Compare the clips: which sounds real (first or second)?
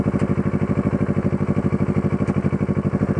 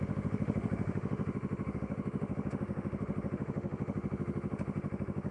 first